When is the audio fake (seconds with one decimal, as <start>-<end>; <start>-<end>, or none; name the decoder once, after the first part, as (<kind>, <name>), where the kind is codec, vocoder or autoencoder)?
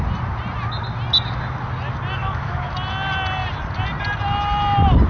2.2-2.7 (autoencoder, DAC-VAE)